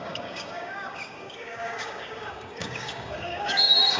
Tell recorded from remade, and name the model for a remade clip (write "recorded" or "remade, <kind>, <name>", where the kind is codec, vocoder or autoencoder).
remade, codec, DAC